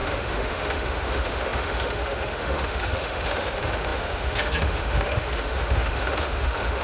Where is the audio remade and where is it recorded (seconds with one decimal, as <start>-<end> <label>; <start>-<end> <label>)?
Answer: 0.0-6.8 remade